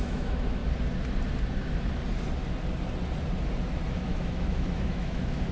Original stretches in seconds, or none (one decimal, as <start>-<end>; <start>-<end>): 0.6-3.9